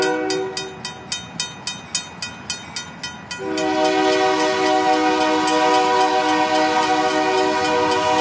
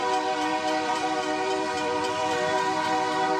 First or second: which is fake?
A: second